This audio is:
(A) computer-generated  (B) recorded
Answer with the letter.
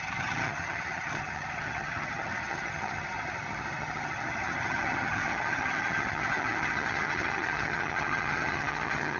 A